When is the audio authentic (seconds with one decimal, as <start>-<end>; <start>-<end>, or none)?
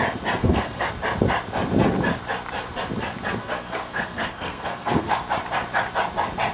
0.0-0.4; 0.9-3.4; 5.2-6.5